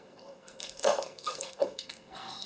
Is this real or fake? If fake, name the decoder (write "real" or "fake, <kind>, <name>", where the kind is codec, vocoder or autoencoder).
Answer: fake, codec, SNAC